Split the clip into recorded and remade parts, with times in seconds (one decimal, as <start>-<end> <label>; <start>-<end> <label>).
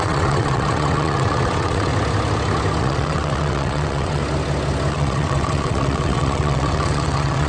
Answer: 0.0-1.9 remade; 1.9-2.8 recorded; 2.8-4.2 remade; 4.2-4.9 recorded; 4.9-7.5 remade